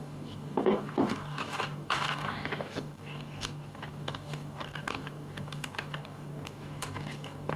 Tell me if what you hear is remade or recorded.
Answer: remade